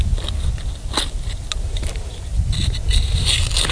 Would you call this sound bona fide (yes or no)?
yes